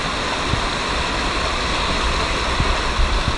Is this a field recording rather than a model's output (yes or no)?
yes